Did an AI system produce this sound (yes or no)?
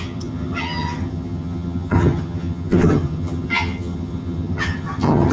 yes